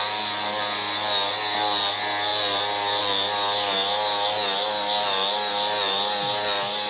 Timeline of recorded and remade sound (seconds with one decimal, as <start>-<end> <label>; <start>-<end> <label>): 0.0-6.9 recorded